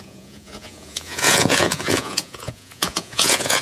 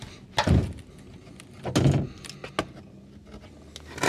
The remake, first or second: first